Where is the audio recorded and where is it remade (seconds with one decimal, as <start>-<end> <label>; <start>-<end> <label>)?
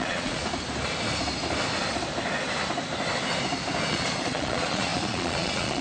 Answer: 0.0-0.4 remade; 0.4-3.9 recorded; 3.9-5.8 remade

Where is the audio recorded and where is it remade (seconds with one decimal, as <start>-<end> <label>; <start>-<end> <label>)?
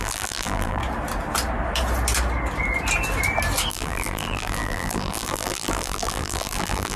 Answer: 0.0-0.8 remade; 0.8-3.7 recorded; 3.7-7.0 remade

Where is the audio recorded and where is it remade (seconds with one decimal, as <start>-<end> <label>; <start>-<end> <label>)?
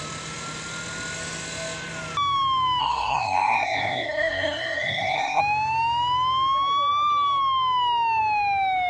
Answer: 0.0-2.8 recorded; 2.8-5.4 remade; 5.4-8.9 recorded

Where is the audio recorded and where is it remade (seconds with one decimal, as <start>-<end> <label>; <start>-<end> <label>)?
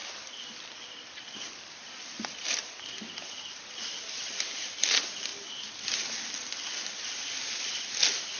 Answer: 0.0-2.8 remade; 2.8-8.4 recorded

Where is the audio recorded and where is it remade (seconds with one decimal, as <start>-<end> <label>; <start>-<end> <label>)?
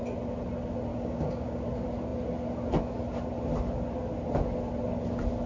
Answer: 0.0-0.9 recorded; 0.9-1.6 remade; 1.6-5.5 recorded